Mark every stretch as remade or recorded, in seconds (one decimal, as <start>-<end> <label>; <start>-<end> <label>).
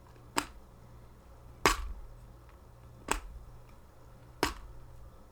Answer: 0.0-5.3 recorded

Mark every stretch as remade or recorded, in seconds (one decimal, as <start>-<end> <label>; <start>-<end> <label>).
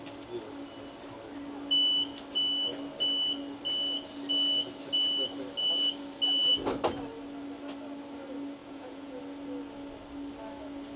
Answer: 0.0-8.6 recorded; 8.6-9.2 remade; 9.2-11.0 recorded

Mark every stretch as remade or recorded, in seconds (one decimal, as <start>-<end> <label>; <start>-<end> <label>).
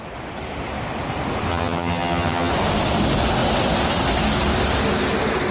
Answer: 0.0-1.5 recorded; 1.5-2.5 remade; 2.5-5.5 recorded